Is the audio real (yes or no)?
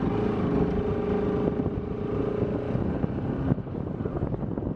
yes